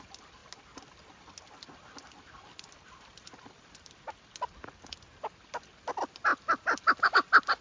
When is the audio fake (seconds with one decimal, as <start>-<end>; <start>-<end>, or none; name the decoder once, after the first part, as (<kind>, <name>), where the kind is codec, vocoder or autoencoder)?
none